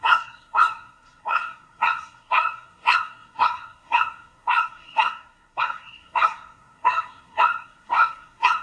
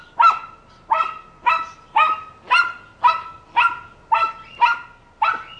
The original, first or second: second